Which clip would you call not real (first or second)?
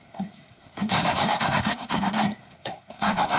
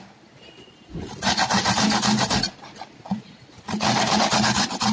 first